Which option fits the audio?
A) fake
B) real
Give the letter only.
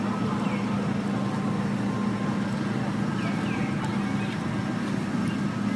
B